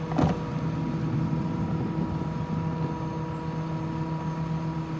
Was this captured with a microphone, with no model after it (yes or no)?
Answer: yes